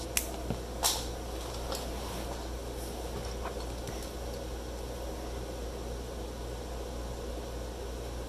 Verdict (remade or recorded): recorded